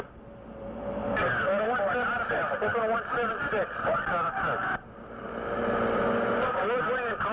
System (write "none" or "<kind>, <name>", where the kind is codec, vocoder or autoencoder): none